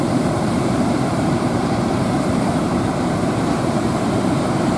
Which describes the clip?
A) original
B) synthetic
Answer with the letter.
B